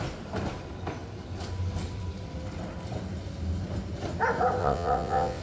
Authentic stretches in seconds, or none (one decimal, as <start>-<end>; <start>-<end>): 0.0-4.6